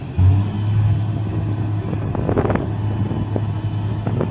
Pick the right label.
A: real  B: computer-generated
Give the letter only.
A